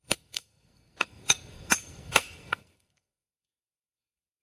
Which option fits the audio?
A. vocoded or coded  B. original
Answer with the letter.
A